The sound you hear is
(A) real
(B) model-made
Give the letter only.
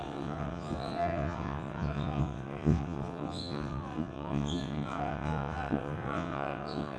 B